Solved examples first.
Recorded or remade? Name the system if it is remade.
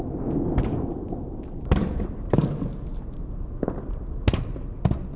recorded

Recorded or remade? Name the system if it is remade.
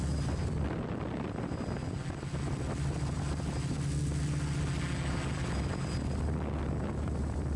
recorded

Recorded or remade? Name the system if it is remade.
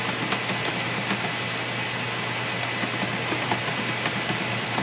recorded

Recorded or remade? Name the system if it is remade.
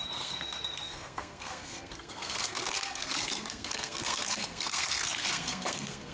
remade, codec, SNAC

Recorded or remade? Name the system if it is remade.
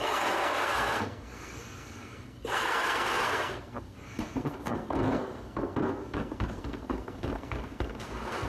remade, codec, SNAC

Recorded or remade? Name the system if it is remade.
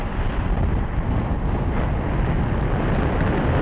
recorded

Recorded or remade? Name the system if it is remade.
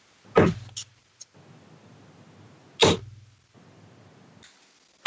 recorded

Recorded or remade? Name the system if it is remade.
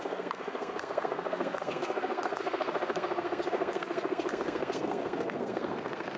remade, codec, SNAC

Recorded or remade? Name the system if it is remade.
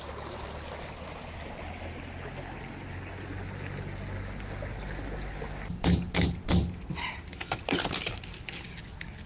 recorded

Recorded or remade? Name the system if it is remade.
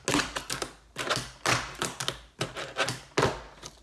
recorded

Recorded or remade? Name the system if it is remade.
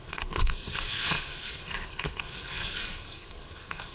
remade, codec, SNAC